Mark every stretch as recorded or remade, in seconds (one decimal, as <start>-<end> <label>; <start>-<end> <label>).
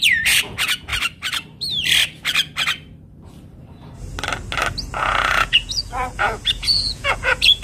0.0-0.9 remade; 0.9-4.9 recorded; 4.9-7.6 remade